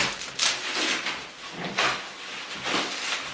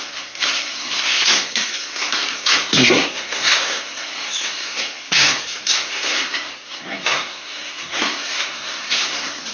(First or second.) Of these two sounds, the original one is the first